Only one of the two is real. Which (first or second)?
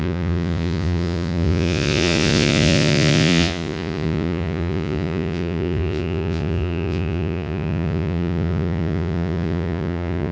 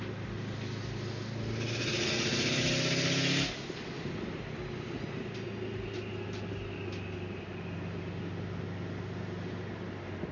second